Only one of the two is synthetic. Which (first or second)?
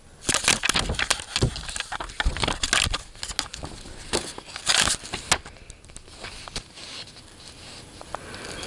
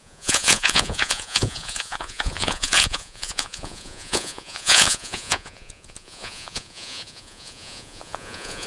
second